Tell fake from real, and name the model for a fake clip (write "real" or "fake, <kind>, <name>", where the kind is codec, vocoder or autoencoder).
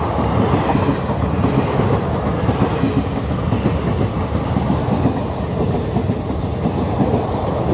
real